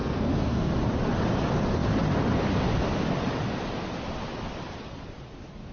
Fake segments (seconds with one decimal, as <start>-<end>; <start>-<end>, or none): 0.0-0.7